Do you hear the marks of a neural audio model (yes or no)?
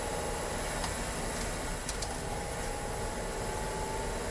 no